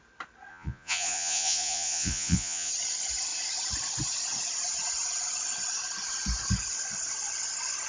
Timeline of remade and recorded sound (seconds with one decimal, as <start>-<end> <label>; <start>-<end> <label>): 0.0-0.5 recorded; 0.5-2.7 remade; 2.7-7.9 recorded